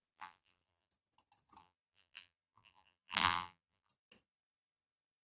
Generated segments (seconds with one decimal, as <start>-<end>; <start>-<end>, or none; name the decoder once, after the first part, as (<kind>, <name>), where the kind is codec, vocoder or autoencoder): 0.0-0.9 (vocoder, BigVGAN v2); 1.6-3.9